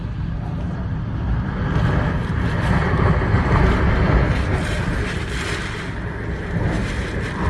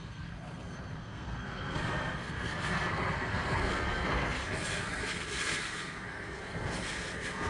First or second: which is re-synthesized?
second